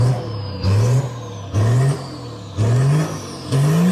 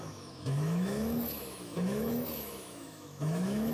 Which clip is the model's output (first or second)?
second